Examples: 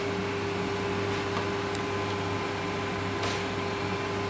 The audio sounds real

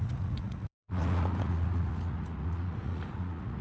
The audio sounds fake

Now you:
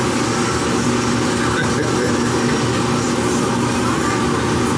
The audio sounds real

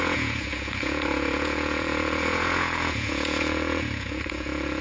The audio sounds fake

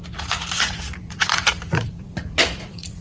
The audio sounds fake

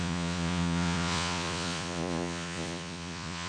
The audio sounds fake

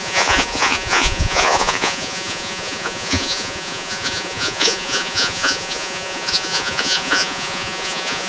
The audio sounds fake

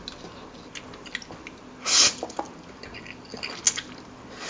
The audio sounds real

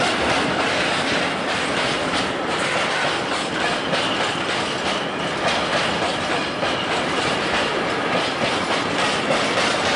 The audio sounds real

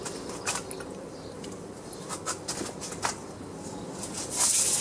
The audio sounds real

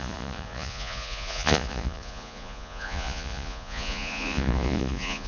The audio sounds fake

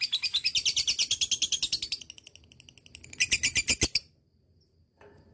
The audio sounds real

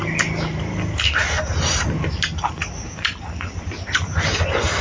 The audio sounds real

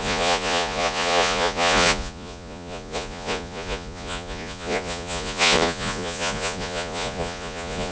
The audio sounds fake